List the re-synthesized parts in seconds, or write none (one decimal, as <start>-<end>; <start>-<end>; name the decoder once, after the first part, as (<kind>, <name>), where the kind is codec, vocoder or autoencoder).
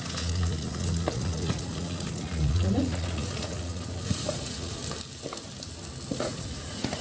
0.0-4.8 (vocoder, Vocos); 6.1-7.0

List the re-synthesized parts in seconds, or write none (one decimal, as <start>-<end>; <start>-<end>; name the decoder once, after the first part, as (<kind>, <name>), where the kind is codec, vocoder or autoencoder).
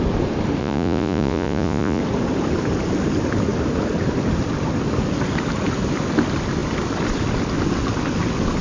0.6-2.0 (vocoder, Vocos)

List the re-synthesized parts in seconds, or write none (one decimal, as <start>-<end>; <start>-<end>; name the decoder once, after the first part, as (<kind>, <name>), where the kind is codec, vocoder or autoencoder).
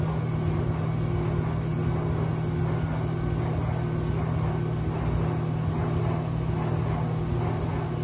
none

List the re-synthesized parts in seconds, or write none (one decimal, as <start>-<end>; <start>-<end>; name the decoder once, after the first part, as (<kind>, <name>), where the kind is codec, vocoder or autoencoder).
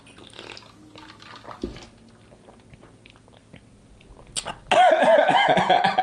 none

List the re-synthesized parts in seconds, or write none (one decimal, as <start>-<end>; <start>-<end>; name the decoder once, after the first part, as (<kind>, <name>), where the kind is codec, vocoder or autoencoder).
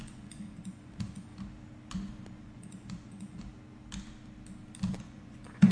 0.0-1.3 (vocoder, Vocos); 2.4-3.5; 5.0-5.7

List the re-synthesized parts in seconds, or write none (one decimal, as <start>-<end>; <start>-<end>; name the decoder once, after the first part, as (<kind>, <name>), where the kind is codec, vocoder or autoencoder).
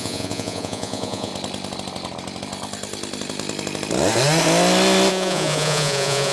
0.0-1.3 (vocoder, Vocos); 5.1-6.3